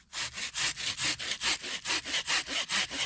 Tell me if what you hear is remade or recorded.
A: recorded